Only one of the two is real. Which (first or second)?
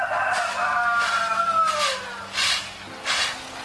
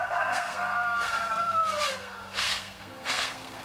first